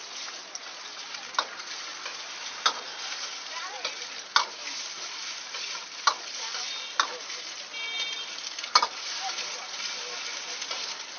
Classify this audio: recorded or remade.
recorded